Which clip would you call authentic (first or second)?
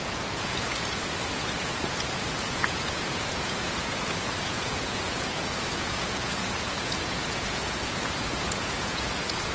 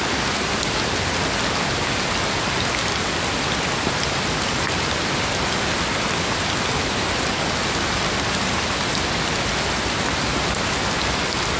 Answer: second